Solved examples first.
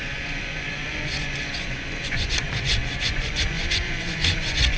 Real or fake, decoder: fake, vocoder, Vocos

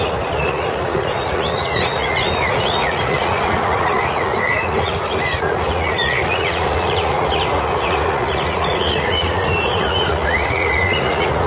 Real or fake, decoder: fake, vocoder, Vocos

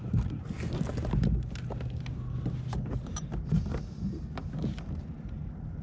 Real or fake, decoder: real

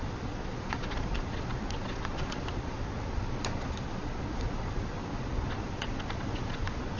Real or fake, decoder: fake, vocoder, Vocos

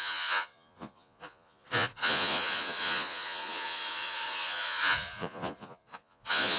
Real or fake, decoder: fake, vocoder, Vocos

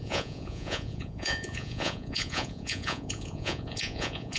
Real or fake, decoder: fake, vocoder, Vocos